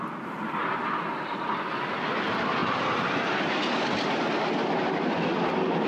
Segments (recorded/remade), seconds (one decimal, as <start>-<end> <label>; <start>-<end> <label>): 0.0-5.9 recorded